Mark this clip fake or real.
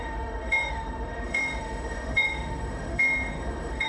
fake